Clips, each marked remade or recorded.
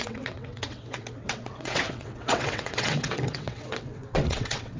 remade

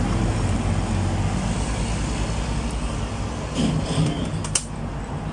recorded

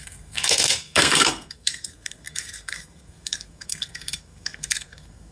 remade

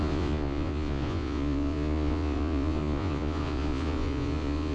remade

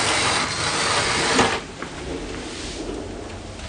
recorded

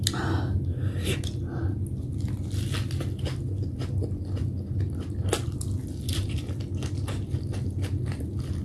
recorded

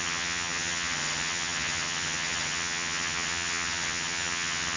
remade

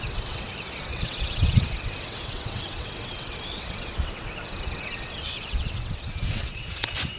remade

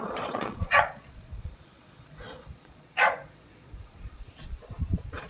remade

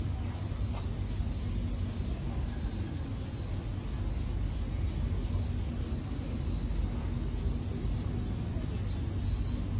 recorded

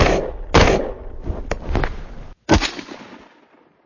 recorded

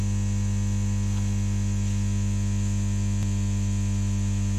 recorded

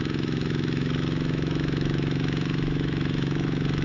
remade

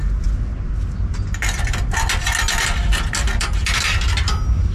recorded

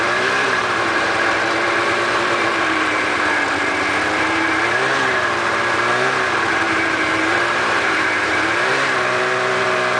remade